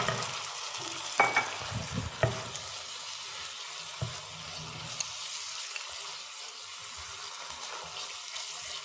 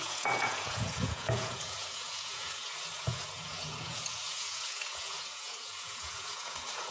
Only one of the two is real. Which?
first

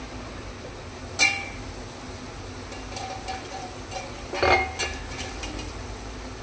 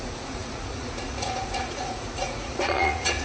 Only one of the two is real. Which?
first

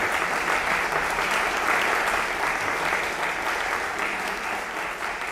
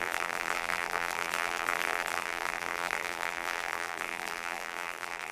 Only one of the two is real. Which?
first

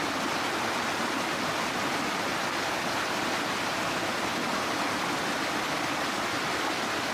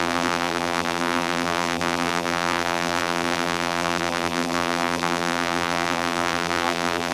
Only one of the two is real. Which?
first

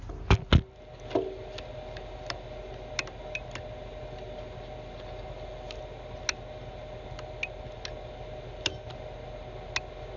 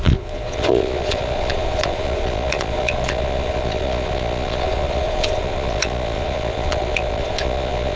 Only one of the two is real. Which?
first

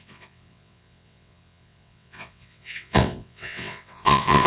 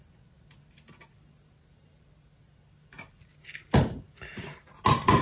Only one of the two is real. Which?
second